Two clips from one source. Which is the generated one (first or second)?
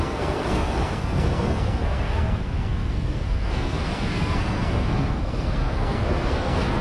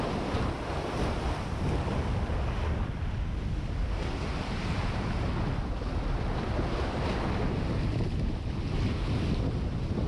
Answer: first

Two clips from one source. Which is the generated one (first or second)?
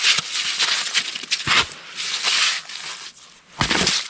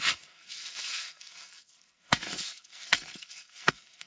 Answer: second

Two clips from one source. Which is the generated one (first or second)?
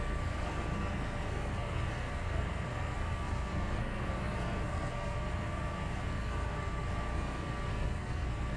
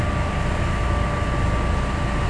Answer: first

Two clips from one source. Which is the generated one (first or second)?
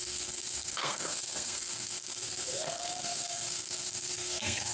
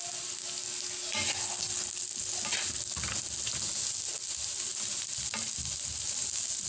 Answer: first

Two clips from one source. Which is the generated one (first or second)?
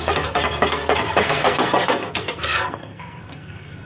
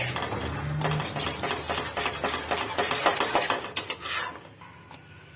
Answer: first